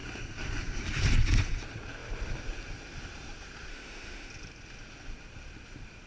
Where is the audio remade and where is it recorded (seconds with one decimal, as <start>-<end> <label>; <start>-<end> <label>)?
0.0-3.7 recorded; 3.7-4.3 remade; 4.3-6.1 recorded